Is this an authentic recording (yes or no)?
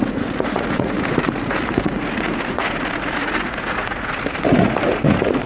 no